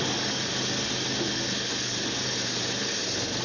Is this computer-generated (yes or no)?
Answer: no